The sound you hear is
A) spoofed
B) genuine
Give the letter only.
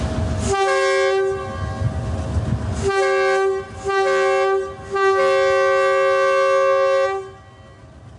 B